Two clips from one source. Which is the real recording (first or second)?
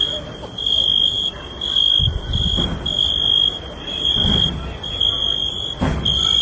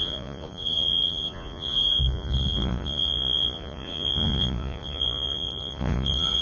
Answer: first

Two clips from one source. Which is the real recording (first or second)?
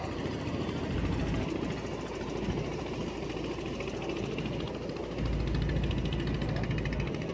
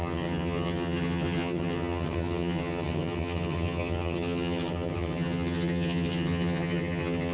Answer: first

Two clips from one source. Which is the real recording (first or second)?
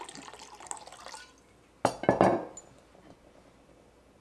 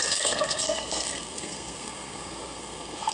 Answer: first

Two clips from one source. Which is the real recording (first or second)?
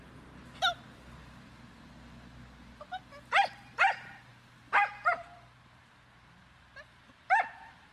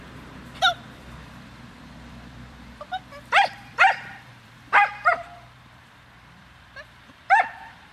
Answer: first